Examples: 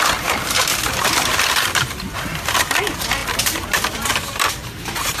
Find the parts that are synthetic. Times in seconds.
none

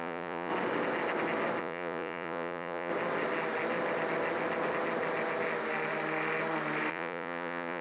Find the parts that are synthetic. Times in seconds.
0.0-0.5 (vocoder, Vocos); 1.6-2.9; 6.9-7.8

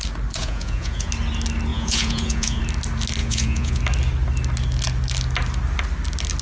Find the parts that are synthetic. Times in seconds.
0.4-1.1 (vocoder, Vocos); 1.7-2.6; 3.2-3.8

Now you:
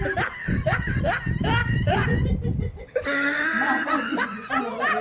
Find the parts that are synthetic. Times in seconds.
0.4-1.0 (vocoder, Vocos); 1.6-4.6

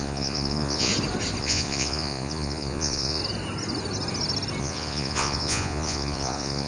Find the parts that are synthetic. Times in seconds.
0.0-0.9 (vocoder, Vocos); 1.4-3.2; 4.6-6.7